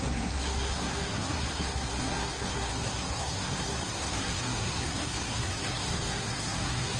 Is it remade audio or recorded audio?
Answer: remade